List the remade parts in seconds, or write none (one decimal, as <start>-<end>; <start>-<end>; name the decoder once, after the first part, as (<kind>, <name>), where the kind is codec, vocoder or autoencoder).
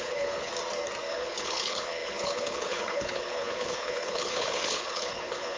0.0-0.5 (codec, HILCodec); 1.1-5.6